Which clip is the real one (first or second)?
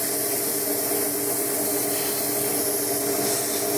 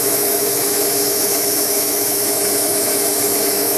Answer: first